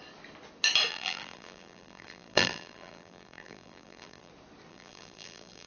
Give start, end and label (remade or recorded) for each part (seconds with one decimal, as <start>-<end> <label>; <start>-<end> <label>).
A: 0.0-0.9 recorded; 0.9-4.3 remade; 4.3-4.7 recorded; 4.7-5.7 remade